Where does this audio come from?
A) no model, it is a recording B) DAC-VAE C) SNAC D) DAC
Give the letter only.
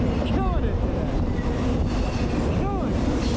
A